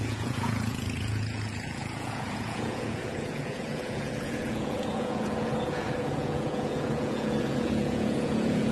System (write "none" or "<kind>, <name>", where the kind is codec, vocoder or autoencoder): vocoder, Vocos